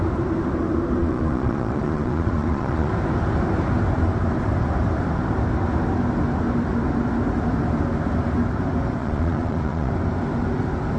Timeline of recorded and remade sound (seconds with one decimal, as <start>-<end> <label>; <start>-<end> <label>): 0.0-1.0 recorded; 1.0-2.9 remade; 2.9-9.0 recorded; 9.0-9.9 remade; 9.9-11.0 recorded